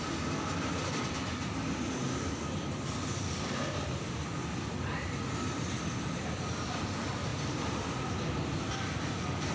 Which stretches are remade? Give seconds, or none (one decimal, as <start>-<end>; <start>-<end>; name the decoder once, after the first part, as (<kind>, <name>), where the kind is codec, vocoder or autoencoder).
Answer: 0.0-1.3 (vocoder, BigVGAN v2); 5.5-9.5